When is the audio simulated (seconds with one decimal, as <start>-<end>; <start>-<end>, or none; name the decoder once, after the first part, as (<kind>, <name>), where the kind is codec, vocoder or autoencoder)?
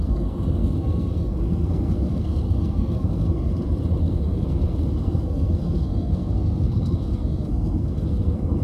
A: 0.0-3.4 (codec, SNAC); 4.0-8.6